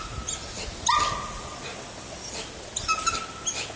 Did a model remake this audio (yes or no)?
no